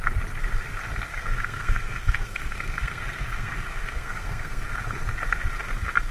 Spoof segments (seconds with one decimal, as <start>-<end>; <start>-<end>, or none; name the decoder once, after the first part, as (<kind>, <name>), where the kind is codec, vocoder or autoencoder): 1.1-4.8 (codec, SNAC)